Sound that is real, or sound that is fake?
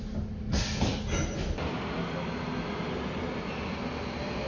real